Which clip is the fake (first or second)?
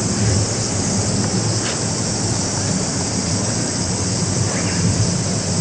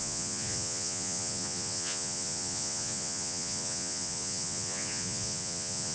second